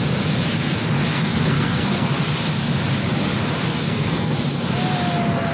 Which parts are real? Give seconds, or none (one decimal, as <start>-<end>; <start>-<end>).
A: 0.0-1.1; 2.1-3.7; 4.3-5.5